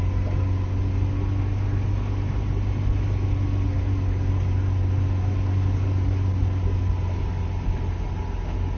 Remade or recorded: recorded